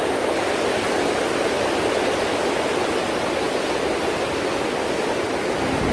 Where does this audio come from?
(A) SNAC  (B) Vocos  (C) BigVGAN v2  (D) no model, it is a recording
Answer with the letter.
D